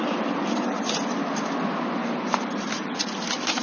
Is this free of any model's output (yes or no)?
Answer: yes